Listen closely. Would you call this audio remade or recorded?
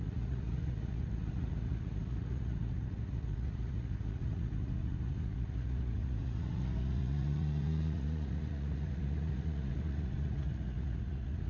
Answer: remade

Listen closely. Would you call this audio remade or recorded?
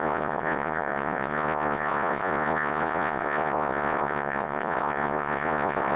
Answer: remade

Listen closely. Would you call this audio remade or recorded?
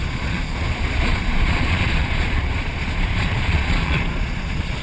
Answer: remade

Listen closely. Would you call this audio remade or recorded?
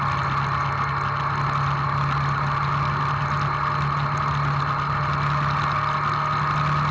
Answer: recorded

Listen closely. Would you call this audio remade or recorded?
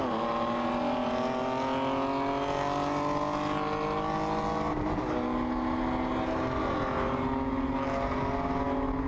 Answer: recorded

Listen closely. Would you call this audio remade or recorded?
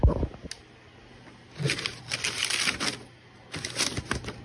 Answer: recorded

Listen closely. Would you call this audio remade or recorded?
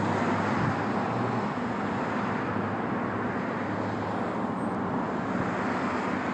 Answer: recorded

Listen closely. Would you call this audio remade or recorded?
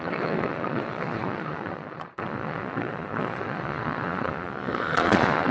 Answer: remade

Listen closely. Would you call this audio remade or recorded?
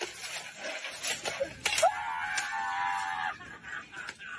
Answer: recorded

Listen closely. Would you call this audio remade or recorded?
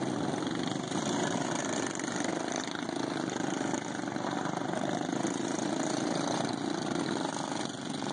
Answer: recorded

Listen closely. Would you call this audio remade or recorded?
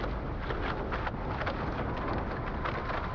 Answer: recorded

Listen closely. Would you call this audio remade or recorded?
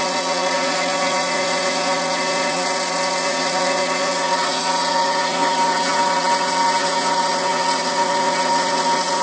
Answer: remade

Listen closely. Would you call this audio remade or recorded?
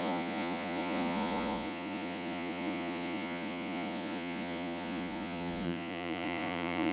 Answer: remade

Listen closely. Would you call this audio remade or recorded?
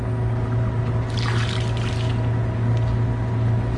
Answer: recorded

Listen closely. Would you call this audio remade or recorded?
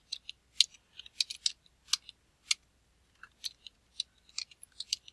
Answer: recorded